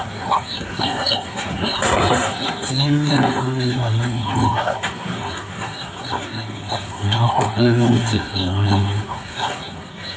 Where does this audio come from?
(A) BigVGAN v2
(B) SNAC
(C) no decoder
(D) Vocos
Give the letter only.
B